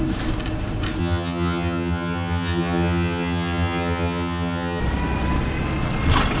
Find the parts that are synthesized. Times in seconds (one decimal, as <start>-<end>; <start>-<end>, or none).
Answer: 1.0-4.8